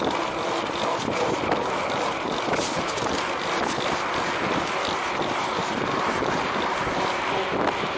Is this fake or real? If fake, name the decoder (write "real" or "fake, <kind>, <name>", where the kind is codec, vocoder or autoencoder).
real